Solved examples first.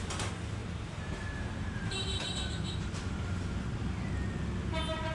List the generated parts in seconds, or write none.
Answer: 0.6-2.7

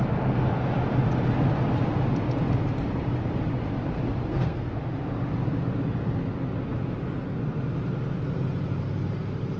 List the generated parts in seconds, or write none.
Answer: 4.3-4.8

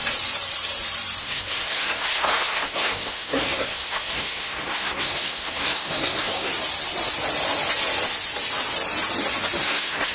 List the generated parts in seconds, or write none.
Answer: 1.2-6.5; 9.6-10.1

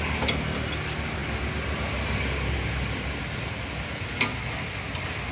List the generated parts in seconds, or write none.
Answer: none